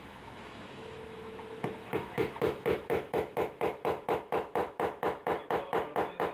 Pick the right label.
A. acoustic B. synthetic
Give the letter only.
B